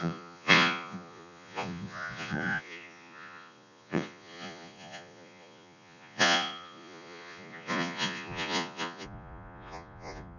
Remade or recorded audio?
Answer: remade